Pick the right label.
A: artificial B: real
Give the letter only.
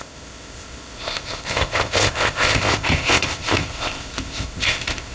A